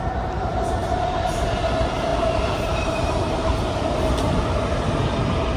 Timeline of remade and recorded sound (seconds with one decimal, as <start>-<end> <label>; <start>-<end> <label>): 0.0-0.8 recorded; 0.8-1.4 remade; 1.4-2.1 recorded; 2.1-3.6 remade; 3.6-5.6 recorded